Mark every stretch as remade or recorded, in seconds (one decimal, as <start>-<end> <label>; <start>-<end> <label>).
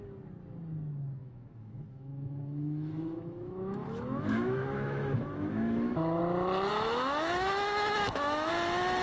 0.0-1.2 recorded; 1.2-6.2 remade; 6.2-6.7 recorded; 6.7-8.5 remade; 8.5-9.0 recorded